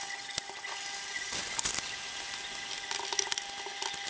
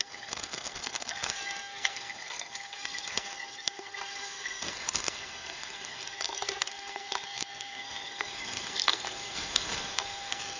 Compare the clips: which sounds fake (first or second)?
second